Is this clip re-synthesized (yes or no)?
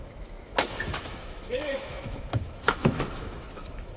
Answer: yes